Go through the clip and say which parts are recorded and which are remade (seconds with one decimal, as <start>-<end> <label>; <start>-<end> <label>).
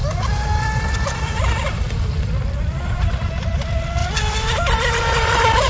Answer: 0.0-1.2 recorded; 1.2-5.7 remade